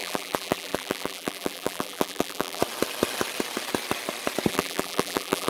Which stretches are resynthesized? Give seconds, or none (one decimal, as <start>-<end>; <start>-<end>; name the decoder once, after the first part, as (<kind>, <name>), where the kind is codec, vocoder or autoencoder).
0.0-2.6 (vocoder, BigVGAN v2); 4.5-5.5